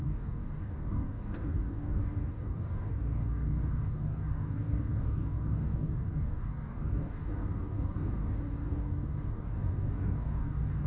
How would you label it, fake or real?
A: fake